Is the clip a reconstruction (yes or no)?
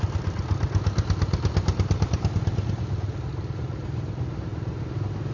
no